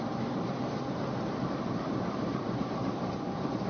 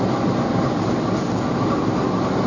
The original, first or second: second